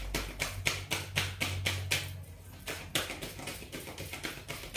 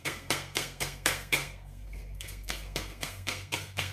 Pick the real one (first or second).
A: first